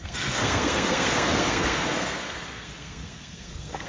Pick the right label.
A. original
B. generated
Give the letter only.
B